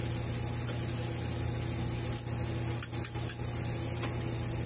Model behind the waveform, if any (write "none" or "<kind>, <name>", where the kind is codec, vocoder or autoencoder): none